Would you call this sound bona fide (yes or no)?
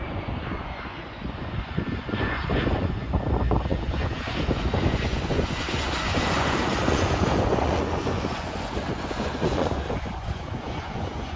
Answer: no